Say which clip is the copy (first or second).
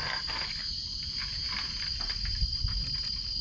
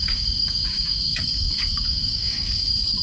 second